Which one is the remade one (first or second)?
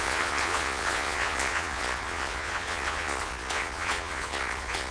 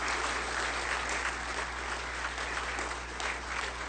first